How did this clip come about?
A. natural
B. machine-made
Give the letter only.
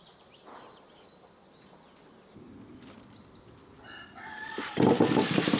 A